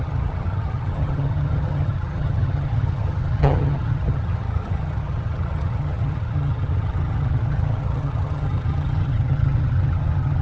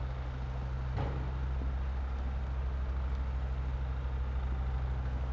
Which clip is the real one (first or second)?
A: second